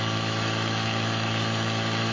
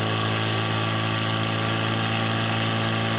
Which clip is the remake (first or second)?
first